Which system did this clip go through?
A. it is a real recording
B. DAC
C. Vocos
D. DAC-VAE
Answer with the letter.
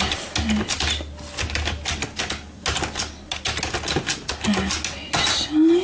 A